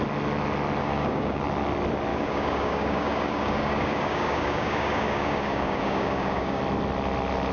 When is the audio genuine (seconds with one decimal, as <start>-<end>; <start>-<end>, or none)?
0.0-0.8; 1.4-2.1; 6.6-7.5